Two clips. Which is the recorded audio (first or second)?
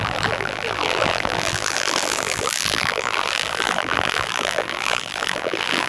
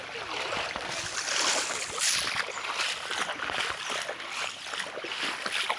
second